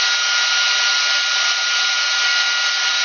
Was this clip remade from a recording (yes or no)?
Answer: no